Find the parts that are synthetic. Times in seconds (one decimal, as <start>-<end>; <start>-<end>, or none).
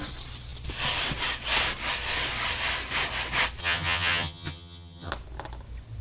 3.6-5.1